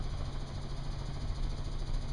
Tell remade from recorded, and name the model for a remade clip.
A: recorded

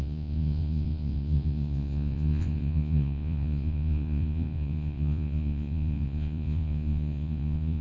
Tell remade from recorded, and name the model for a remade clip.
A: remade, vocoder, Vocos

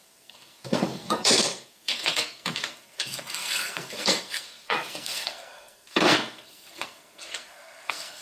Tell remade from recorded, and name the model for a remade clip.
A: remade, codec, SNAC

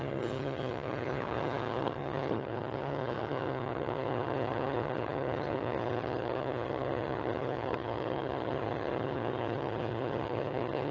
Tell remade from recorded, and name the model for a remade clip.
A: remade, vocoder, HiFi-GAN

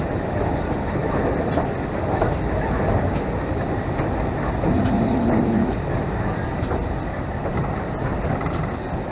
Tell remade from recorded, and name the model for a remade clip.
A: recorded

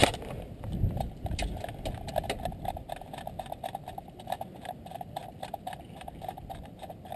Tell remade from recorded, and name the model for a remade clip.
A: remade, vocoder, BigVGAN v2